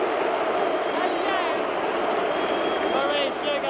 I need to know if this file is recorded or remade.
recorded